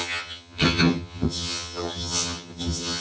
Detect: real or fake fake